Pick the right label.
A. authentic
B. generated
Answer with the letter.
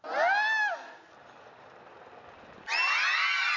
A